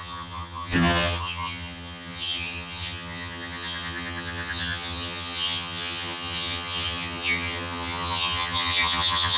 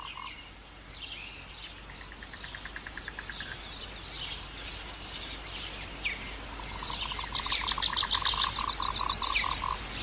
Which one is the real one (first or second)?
second